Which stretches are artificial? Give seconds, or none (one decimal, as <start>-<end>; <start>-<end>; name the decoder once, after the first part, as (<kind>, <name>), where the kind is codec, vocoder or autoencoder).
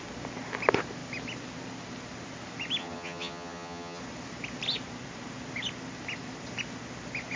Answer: 2.8-4.0 (vocoder, HiFi-GAN)